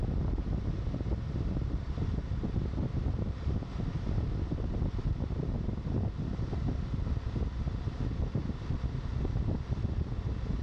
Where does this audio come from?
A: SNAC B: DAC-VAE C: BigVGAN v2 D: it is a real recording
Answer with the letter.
D